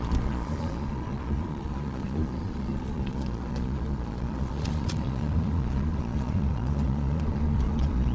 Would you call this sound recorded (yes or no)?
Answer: no